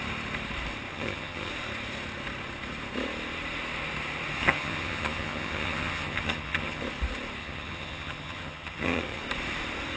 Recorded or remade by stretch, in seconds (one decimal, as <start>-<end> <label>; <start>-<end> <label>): 0.0-0.9 recorded; 0.9-1.5 remade; 1.5-4.4 recorded; 4.4-6.8 remade; 6.8-7.4 recorded; 7.4-9.2 remade; 9.2-10.0 recorded